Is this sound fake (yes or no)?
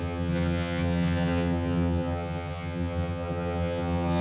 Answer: yes